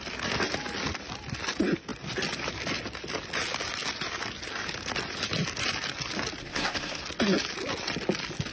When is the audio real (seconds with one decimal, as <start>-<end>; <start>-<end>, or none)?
0.0-6.4; 7.0-8.5